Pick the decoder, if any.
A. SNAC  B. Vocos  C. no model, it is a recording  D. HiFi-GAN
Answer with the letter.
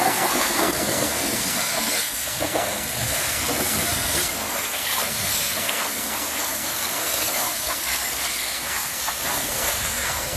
A